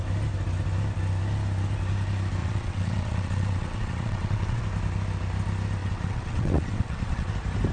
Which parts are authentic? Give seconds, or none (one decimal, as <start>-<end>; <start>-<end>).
0.0-2.4; 4.6-5.8; 7.3-7.7